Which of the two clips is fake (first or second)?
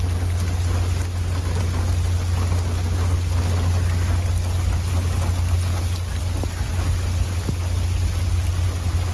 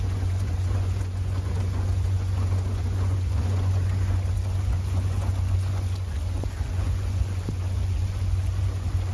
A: second